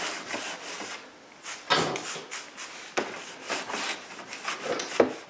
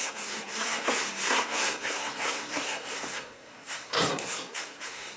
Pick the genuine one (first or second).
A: first